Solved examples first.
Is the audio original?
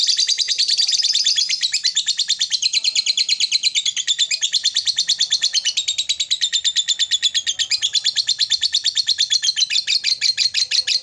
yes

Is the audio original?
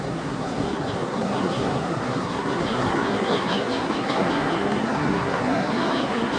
no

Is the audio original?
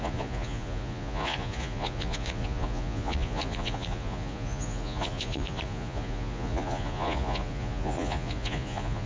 no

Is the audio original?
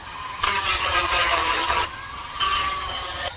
no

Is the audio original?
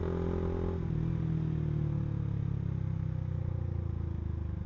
yes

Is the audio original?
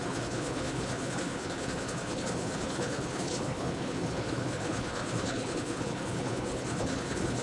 no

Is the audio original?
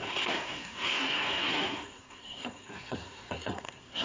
no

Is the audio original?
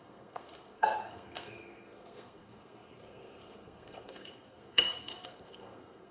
no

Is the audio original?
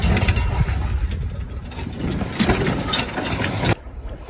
yes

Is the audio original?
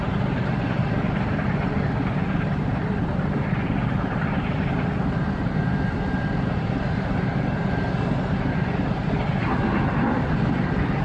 no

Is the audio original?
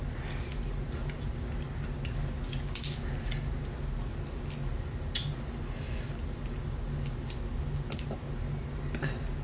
yes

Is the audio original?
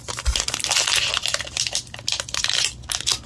yes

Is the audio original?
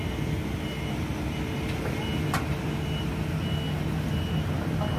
yes